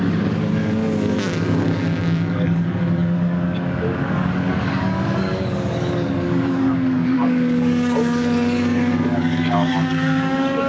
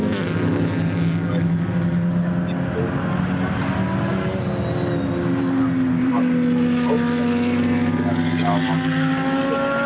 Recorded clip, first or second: second